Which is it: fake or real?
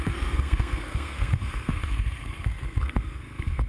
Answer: fake